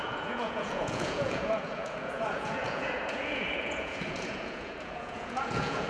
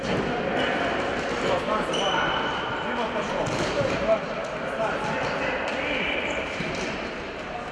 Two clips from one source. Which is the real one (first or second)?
second